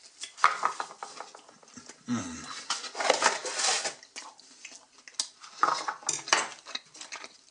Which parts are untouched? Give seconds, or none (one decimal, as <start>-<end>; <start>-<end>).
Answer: 0.0-7.5